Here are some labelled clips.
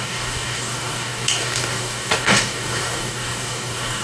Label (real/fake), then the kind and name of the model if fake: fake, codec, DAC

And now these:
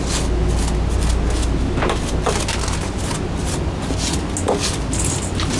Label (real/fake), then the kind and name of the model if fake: real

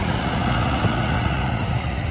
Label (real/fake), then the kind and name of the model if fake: fake, vocoder, Vocos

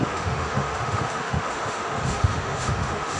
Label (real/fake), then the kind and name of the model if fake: fake, autoencoder, DAC-VAE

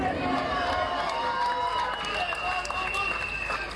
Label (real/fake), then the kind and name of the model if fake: real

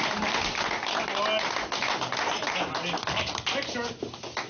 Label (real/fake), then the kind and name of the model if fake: real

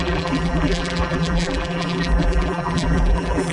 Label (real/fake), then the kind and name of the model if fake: fake, vocoder, BigVGAN v2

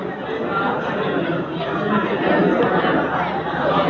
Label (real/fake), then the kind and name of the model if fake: real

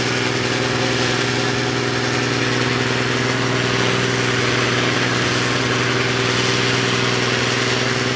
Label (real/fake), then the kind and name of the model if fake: real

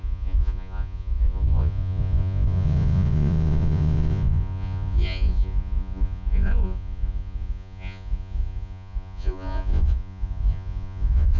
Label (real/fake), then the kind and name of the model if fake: fake, vocoder, Vocos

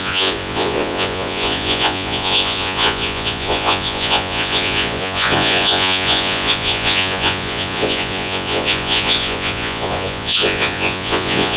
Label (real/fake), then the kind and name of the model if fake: fake, vocoder, Vocos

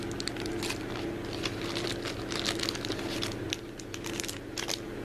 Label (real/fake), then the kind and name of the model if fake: real